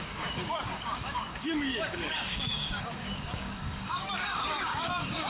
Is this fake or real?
fake